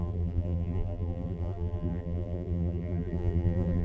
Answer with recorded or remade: remade